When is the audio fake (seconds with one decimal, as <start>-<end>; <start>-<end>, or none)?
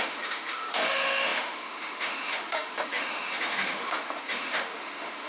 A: 0.0-5.3